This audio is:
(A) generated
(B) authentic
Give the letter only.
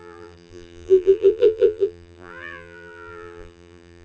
A